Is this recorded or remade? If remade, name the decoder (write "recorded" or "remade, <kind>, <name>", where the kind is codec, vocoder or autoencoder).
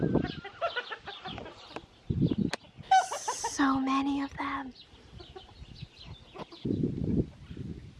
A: recorded